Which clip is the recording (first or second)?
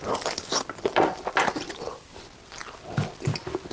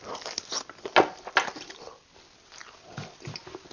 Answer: second